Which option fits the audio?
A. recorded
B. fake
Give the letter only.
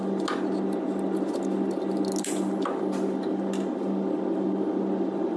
A